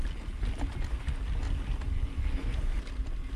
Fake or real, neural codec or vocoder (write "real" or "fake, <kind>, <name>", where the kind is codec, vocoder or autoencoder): real